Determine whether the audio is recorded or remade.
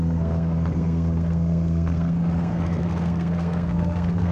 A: remade